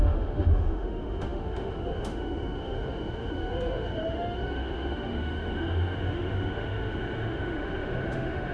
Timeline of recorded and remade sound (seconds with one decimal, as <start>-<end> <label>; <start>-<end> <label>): 0.0-8.5 remade